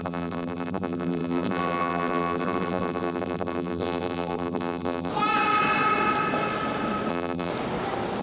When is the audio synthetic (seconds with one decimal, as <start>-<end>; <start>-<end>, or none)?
0.0-5.1; 7.1-7.5